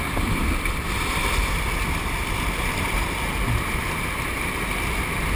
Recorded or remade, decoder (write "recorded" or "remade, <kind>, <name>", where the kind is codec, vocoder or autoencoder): recorded